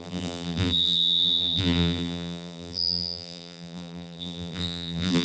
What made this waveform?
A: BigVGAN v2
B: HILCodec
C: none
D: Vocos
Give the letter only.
A